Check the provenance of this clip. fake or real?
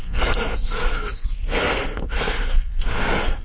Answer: fake